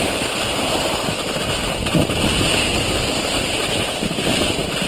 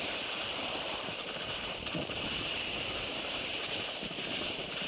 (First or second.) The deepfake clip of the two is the second